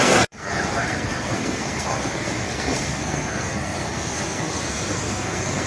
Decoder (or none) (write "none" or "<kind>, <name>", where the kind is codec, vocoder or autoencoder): codec, SNAC